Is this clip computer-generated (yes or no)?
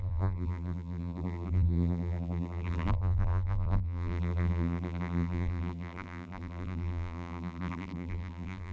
yes